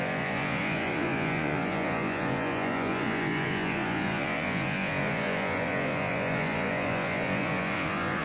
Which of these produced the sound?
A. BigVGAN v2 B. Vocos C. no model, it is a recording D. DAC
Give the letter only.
B